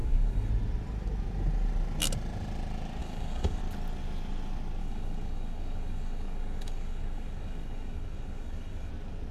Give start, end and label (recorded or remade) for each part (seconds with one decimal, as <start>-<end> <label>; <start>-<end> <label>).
0.0-0.5 remade; 0.5-3.0 recorded; 3.0-3.6 remade; 3.6-4.8 recorded; 4.8-8.9 remade; 8.9-9.3 recorded